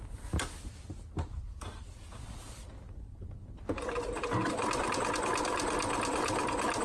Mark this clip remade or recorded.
recorded